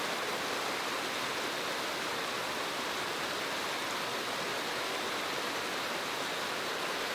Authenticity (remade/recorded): recorded